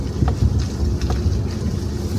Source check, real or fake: real